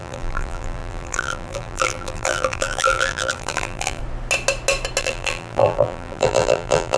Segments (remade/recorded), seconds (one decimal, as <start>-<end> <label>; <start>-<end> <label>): 0.0-4.0 remade; 4.0-5.0 recorded; 5.0-7.0 remade